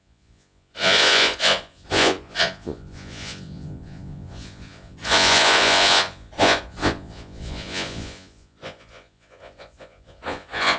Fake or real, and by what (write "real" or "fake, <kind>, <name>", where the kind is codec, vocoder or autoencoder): fake, vocoder, Vocos